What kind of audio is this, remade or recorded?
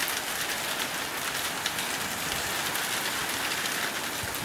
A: recorded